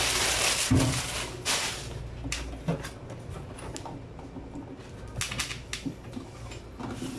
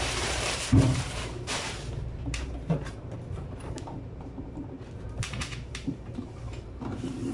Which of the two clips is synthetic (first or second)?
second